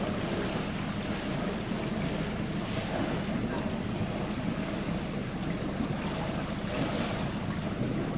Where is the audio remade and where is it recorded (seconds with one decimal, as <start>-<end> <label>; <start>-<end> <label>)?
0.0-8.2 recorded